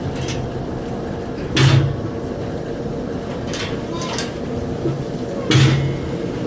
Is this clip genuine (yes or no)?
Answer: yes